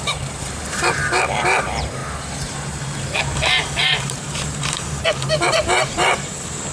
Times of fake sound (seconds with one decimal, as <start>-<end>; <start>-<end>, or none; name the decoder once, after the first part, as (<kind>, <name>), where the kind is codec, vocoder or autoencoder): 0.0-2.0 (vocoder, BigVGAN v2); 3.2-6.7